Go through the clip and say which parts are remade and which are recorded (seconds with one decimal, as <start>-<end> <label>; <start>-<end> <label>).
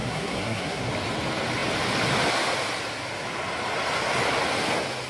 0.0-0.9 remade; 0.9-5.1 recorded